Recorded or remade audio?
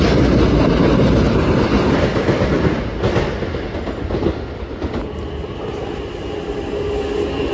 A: recorded